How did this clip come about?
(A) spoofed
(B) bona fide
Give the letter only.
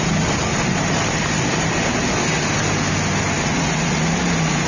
B